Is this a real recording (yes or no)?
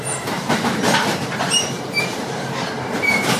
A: no